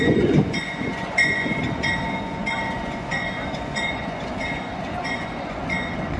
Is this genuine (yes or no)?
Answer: no